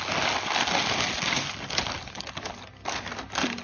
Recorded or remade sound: recorded